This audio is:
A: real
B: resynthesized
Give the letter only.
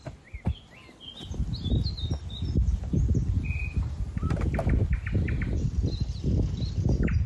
A